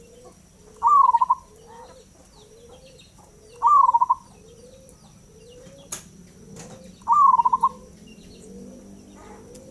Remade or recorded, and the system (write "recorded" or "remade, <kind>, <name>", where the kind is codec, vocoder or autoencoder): recorded